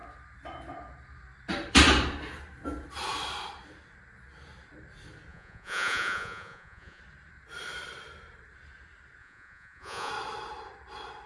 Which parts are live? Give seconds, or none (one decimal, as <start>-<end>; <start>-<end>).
0.0-5.3; 7.0-9.2; 10.1-11.3